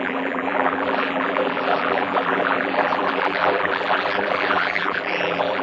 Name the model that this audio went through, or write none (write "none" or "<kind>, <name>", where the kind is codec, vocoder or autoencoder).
vocoder, BigVGAN v2